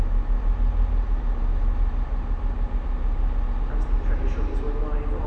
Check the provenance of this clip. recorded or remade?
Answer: recorded